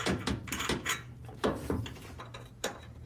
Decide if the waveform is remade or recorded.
remade